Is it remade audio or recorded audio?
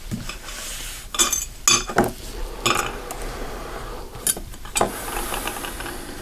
recorded